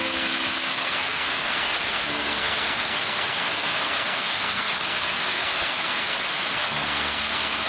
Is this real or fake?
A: fake